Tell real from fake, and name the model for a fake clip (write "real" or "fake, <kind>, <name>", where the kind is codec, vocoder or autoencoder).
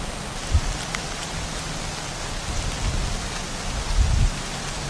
real